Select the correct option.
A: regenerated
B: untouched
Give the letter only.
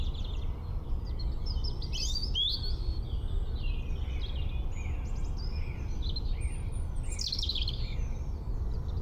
B